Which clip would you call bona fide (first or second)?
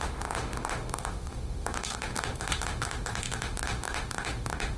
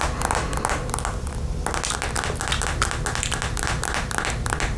second